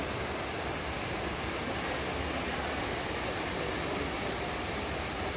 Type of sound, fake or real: real